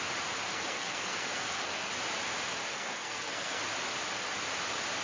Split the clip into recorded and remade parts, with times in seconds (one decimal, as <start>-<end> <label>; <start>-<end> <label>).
0.0-0.5 recorded; 0.5-1.9 remade; 1.9-2.7 recorded; 2.7-3.6 remade; 3.6-5.0 recorded